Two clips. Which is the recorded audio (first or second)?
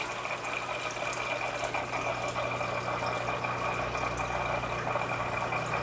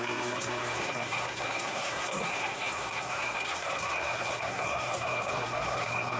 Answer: first